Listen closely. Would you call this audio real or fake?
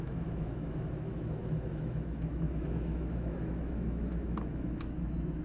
fake